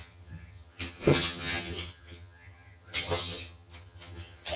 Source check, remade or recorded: remade